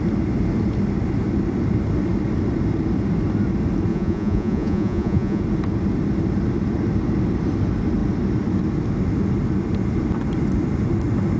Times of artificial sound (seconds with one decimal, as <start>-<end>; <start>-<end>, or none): 3.9-5.4